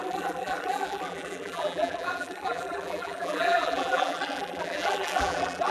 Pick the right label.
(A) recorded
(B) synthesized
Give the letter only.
B